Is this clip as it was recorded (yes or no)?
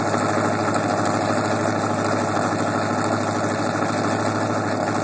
yes